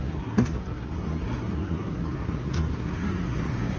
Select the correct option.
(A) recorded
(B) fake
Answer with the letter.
B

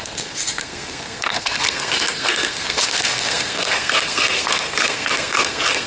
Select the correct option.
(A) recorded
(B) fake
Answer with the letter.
B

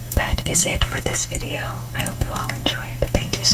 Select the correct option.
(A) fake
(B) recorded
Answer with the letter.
A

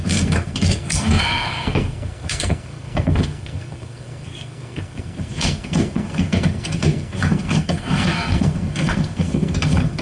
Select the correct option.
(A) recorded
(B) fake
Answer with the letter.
B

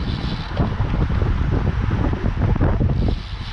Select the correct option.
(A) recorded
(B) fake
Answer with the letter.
A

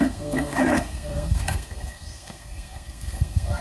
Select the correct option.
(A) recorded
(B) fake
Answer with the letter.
B